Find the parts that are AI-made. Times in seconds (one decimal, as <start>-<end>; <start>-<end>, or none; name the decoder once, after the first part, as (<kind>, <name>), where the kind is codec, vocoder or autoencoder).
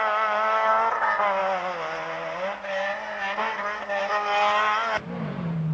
0.0-0.7 (autoencoder, DAC-VAE)